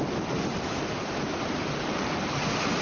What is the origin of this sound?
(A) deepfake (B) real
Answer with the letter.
A